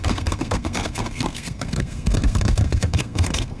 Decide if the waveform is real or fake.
fake